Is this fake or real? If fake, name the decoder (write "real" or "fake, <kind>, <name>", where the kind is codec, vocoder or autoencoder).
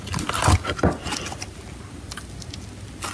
real